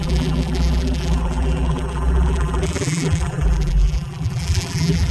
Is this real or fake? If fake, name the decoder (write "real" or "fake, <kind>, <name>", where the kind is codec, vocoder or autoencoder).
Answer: fake, vocoder, BigVGAN v2